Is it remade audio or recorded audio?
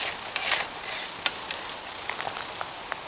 recorded